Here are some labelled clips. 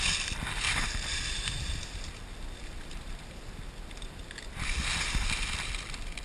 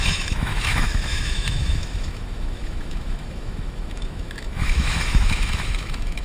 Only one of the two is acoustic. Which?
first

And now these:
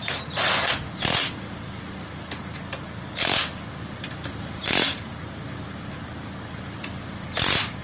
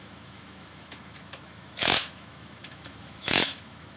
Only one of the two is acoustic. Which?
first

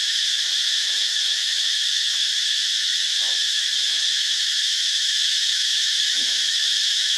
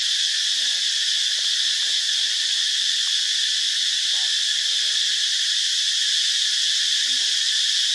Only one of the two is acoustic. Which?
second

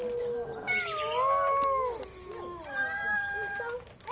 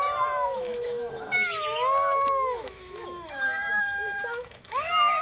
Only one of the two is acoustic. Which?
first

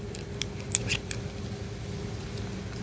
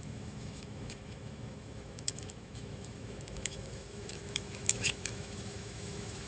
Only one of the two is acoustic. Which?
first